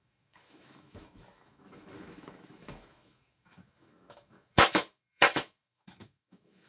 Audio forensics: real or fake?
fake